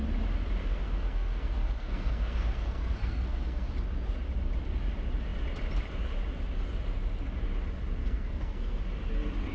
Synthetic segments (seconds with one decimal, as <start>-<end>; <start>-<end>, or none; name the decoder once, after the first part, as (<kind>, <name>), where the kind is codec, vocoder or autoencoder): 0.6-3.7 (codec, SNAC); 8.0-8.8